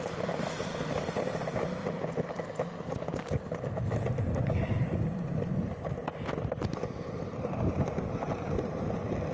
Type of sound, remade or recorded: recorded